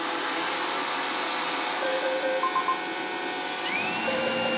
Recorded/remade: recorded